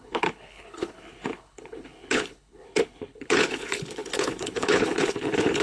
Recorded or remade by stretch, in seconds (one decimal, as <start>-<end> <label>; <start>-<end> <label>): 0.0-5.6 remade